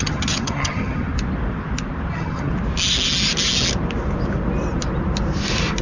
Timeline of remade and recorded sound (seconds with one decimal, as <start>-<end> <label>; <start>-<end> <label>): 0.0-1.1 remade; 1.1-2.1 recorded; 2.1-2.5 remade; 2.5-5.8 recorded